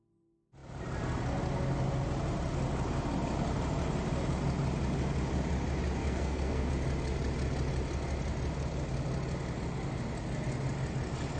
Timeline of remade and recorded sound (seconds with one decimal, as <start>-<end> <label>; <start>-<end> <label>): 0.0-6.0 recorded; 6.0-6.7 remade; 6.7-11.4 recorded